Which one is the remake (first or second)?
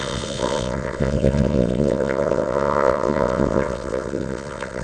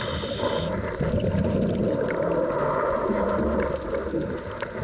first